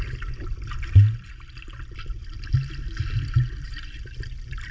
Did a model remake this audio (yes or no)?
no